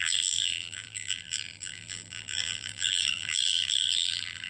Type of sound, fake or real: fake